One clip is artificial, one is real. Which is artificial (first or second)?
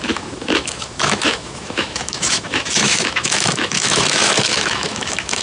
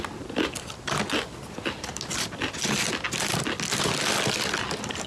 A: first